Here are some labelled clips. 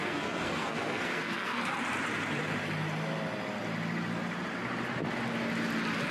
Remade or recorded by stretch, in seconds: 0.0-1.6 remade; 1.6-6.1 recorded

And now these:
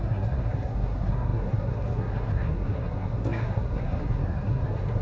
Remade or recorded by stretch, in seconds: 0.0-5.0 remade

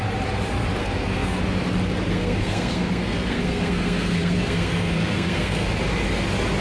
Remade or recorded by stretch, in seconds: 0.0-0.8 recorded; 0.8-1.4 remade; 1.4-2.1 recorded; 2.1-5.7 remade; 5.7-6.6 recorded

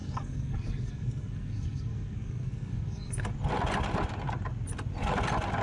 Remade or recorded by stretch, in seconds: 0.0-3.3 remade; 3.3-5.6 recorded

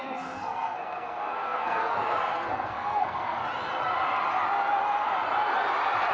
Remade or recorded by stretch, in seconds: 0.0-3.4 remade; 3.4-6.1 recorded

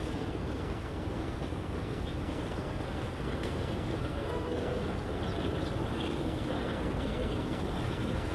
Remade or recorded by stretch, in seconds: 0.0-5.2 remade; 5.2-5.9 recorded; 5.9-8.3 remade

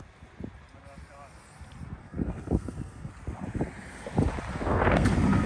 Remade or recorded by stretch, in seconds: 0.0-2.0 recorded; 2.0-3.1 remade; 3.1-4.5 recorded; 4.5-5.1 remade; 5.1-5.5 recorded

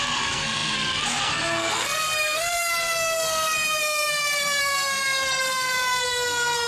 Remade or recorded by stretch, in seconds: 0.0-6.7 remade